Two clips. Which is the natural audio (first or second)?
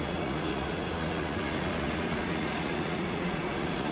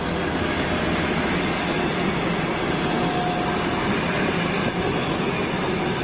second